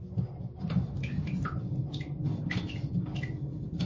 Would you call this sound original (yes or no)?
yes